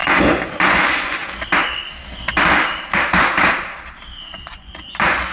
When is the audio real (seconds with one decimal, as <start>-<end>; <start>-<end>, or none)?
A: 1.2-4.4